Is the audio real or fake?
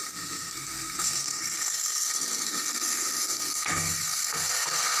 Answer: fake